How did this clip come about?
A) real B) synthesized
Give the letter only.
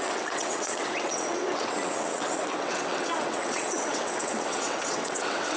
B